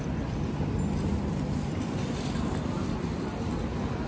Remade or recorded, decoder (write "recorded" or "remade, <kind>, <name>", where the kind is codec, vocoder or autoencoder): recorded